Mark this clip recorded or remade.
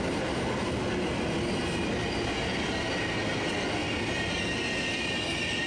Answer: recorded